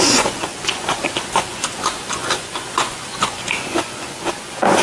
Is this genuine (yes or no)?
no